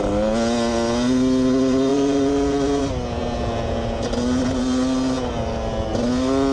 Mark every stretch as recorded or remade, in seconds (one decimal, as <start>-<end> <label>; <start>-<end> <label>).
0.0-1.9 recorded; 1.9-2.8 remade; 2.8-6.5 recorded